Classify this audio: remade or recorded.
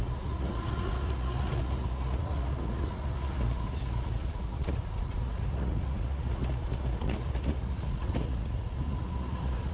remade